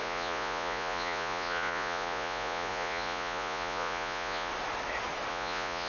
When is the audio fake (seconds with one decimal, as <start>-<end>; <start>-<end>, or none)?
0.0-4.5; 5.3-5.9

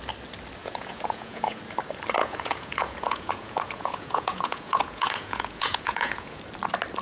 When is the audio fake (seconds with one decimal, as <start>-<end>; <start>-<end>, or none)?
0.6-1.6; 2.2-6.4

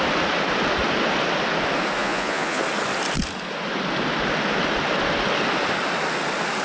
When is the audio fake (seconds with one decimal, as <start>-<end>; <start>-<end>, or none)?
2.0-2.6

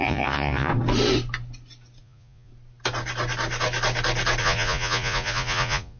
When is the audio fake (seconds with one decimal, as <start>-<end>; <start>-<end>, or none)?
0.0-0.7; 2.0-2.5; 4.4-6.0

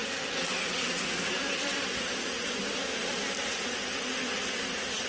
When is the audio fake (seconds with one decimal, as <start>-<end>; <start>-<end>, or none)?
none

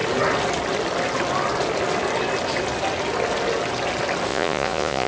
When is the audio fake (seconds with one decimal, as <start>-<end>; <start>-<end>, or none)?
4.3-5.1